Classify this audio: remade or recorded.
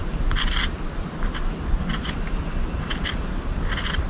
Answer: recorded